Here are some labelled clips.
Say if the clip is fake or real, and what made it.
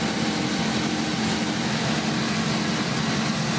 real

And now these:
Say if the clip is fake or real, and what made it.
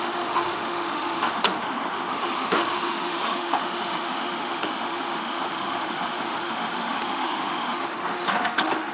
fake, autoencoder, DAC-VAE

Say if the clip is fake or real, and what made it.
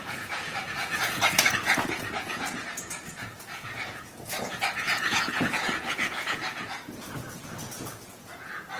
fake, vocoder, Vocos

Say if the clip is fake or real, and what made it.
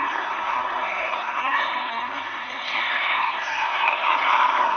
fake, codec, SNAC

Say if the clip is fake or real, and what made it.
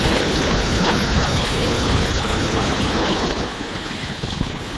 fake, codec, HILCodec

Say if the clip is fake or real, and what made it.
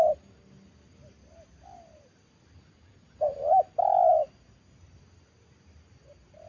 real